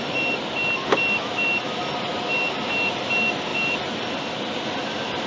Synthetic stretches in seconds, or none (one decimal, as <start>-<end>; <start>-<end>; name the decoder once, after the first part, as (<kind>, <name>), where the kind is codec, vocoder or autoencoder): 3.5-4.2 (vocoder, BigVGAN v2)